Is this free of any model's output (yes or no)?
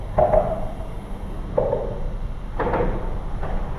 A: yes